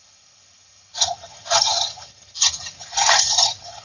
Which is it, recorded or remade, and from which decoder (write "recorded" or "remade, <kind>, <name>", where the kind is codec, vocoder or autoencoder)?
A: remade, vocoder, HiFi-GAN